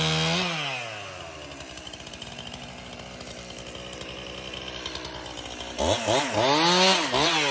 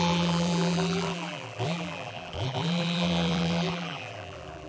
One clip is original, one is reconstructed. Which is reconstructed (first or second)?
second